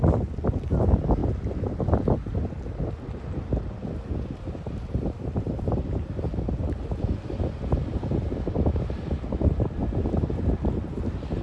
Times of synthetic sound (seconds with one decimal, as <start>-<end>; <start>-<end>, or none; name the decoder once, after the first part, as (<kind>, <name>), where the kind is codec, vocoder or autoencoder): none